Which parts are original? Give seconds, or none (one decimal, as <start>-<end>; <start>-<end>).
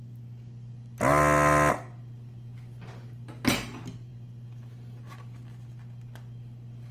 0.0-6.9